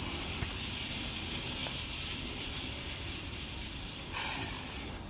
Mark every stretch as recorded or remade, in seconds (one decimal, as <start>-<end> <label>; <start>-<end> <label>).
0.0-1.6 recorded; 1.6-4.5 remade; 4.5-5.1 recorded